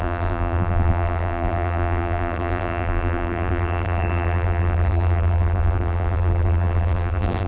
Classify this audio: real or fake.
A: fake